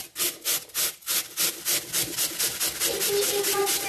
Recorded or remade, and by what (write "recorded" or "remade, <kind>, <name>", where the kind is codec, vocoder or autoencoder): recorded